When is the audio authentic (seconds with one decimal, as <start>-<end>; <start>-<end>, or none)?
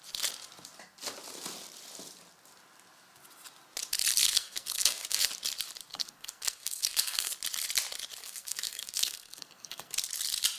0.0-4.2; 5.3-5.9; 7.3-8.2; 9.9-10.6